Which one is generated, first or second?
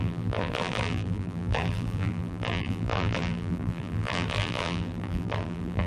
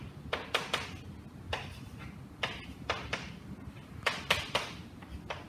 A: first